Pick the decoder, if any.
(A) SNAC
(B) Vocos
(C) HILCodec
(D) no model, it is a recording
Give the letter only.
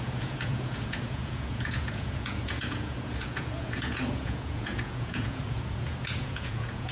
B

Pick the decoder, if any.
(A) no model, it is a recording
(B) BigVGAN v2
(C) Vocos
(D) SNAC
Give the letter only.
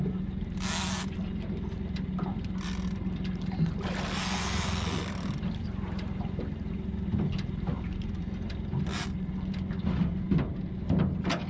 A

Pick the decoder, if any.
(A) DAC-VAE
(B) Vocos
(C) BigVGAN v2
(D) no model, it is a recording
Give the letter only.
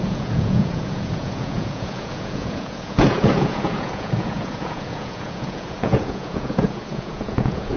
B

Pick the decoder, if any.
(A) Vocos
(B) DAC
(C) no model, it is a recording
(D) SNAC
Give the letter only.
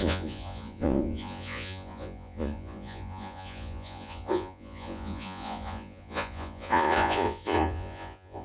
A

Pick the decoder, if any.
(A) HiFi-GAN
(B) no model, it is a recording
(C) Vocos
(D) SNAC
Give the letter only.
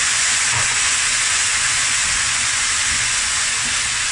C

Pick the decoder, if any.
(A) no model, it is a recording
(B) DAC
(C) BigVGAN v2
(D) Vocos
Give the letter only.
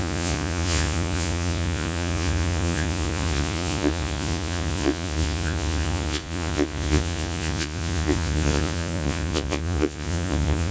D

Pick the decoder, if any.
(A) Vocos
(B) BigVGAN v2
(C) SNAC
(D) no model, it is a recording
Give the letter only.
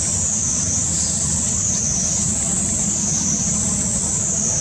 D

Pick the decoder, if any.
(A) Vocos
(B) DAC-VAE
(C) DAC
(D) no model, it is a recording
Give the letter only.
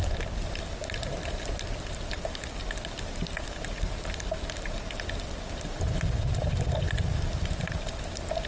D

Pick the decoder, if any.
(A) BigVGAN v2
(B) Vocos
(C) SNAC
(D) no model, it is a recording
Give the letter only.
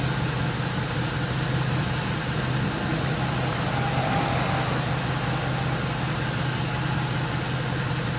D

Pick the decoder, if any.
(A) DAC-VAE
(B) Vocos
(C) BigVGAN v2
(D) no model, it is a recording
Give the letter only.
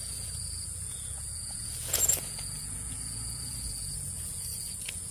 B